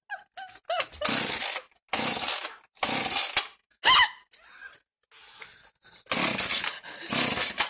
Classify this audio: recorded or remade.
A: recorded